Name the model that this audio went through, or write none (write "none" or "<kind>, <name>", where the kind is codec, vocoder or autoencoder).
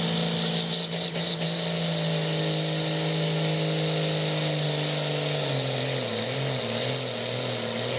none